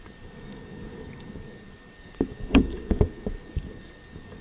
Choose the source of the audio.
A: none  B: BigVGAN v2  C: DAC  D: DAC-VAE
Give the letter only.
C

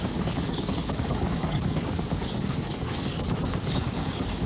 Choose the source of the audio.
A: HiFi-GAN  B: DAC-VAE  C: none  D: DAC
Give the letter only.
D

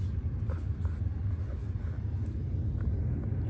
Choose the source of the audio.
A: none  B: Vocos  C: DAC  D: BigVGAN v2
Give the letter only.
A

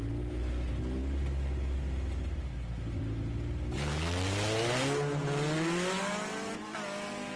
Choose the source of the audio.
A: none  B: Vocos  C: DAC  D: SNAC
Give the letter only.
A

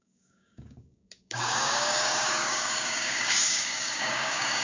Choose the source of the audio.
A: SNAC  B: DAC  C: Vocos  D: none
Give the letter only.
B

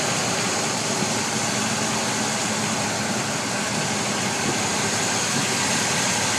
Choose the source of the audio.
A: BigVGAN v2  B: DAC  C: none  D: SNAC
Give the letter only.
C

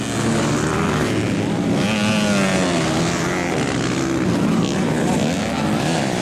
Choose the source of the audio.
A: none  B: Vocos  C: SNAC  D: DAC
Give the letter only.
A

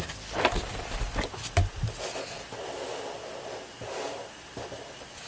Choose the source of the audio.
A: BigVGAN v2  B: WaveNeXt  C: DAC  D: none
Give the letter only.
D